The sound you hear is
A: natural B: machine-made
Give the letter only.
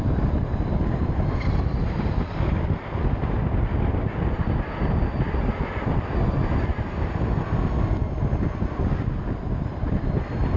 A